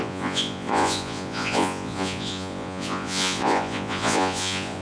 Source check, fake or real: fake